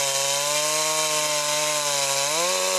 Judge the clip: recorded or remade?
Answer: recorded